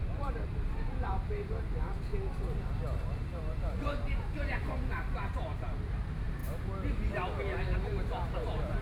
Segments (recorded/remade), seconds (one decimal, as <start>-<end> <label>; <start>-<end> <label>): 0.0-2.1 remade; 2.1-3.3 recorded; 3.3-8.8 remade